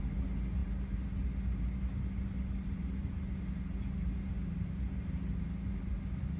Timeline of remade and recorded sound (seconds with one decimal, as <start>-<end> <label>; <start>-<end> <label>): 0.0-6.4 recorded